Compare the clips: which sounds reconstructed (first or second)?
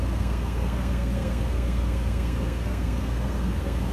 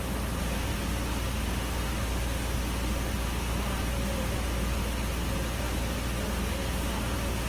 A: first